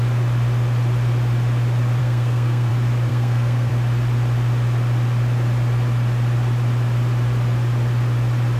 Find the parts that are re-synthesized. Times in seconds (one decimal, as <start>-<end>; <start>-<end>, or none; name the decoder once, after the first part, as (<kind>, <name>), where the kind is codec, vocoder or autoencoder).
2.0-2.7 (codec, SNAC); 3.1-3.7